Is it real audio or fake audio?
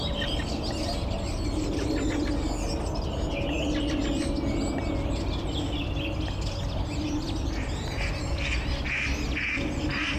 real